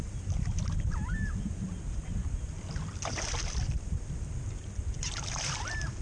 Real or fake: real